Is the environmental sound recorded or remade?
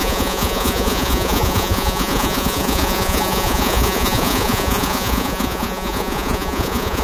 remade